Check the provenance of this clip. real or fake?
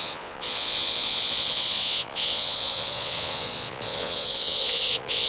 fake